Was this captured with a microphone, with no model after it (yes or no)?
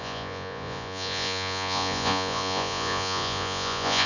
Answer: no